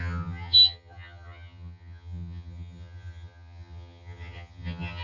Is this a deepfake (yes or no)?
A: yes